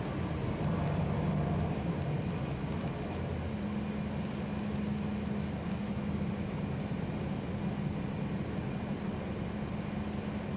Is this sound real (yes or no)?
yes